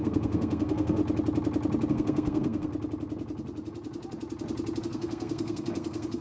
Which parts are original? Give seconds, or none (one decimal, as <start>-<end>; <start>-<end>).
1.0-1.9; 2.7-4.8